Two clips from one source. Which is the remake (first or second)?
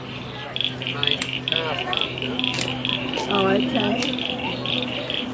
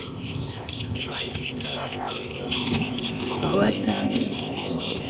second